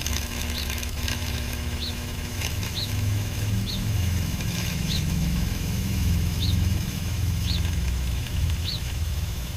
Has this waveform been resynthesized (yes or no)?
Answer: yes